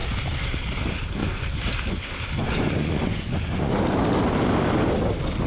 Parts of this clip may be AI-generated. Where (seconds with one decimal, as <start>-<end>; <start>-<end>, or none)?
1.2-1.7; 2.4-3.8